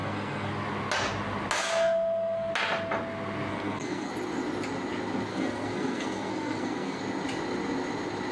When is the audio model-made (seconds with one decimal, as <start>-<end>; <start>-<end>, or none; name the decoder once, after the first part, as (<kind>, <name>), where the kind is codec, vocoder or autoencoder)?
0.0-0.5 (codec, SNAC); 1.6-2.5; 3.5-4.1; 5.3-7.0